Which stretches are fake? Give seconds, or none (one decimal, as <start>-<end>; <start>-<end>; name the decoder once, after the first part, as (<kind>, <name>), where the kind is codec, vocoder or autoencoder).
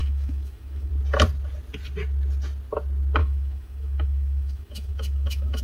0.0-0.9 (autoencoder, DAC-VAE); 3.2-5.6